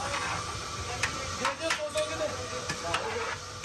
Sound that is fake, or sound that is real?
real